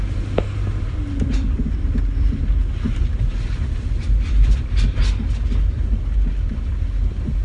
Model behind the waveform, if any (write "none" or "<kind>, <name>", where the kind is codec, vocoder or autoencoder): none